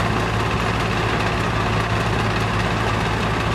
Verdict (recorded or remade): recorded